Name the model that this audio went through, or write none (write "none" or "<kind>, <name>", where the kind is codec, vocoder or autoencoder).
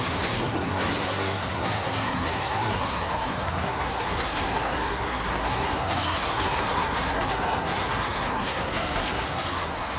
codec, SNAC